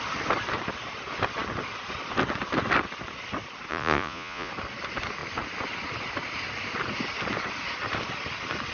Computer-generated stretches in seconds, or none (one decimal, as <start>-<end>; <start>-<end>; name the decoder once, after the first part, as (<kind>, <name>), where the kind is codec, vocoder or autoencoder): 3.7-4.5 (vocoder, Vocos)